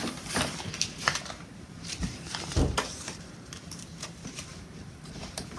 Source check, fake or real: fake